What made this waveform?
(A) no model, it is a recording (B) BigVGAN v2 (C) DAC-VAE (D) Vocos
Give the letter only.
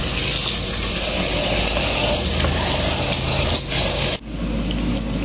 A